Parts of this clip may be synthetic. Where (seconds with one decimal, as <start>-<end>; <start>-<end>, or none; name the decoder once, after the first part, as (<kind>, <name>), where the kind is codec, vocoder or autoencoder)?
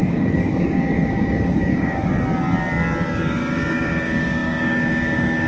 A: 0.0-2.1 (codec, DAC); 3.1-5.5